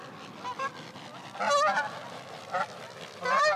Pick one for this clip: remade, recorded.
recorded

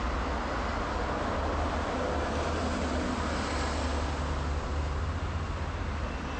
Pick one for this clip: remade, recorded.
recorded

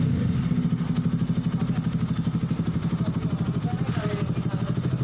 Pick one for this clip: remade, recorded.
recorded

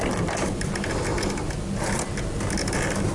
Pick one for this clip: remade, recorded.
recorded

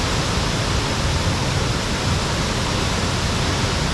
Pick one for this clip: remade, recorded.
recorded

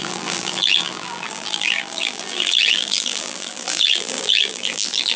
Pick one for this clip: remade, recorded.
remade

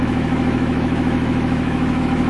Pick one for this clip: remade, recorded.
remade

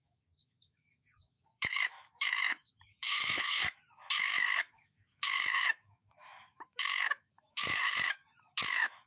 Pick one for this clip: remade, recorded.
remade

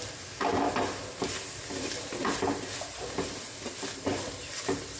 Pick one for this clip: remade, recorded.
recorded